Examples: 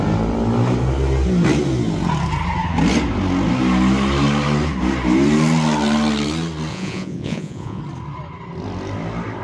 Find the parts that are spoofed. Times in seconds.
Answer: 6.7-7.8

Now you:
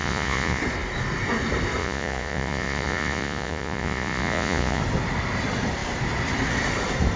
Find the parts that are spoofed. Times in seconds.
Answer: 0.0-0.6; 1.8-4.8

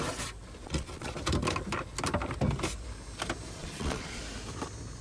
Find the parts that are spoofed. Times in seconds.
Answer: 0.6-1.1; 3.6-4.2

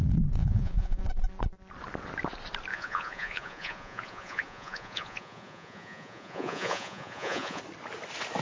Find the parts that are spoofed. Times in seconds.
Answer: 0.4-1.0; 2.7-7.6

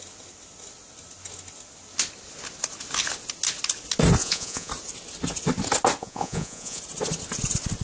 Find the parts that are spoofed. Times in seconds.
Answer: 4.2-4.7; 6.0-6.8

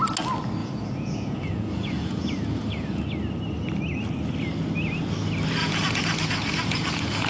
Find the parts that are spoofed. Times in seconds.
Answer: 0.6-3.0; 5.6-7.3

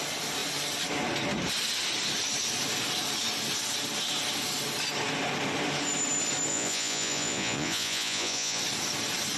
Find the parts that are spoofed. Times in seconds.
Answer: 6.5-8.6